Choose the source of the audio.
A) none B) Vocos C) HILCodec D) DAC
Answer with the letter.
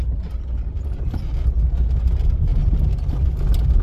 A